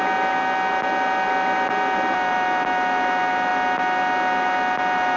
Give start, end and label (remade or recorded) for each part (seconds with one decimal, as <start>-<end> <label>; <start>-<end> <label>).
0.0-5.2 recorded